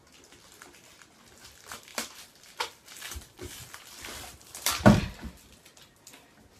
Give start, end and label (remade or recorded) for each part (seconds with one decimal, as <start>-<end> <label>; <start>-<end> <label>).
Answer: 0.0-1.9 recorded; 1.9-5.4 remade; 5.4-6.6 recorded